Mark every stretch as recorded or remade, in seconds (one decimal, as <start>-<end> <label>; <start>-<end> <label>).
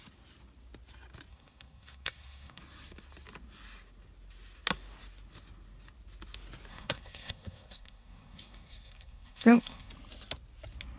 0.0-1.3 recorded; 1.3-2.6 remade; 2.6-6.7 recorded; 6.7-9.9 remade; 9.9-11.0 recorded